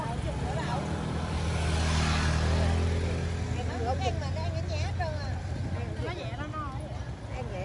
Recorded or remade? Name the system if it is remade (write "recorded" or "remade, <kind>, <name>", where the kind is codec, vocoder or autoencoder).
recorded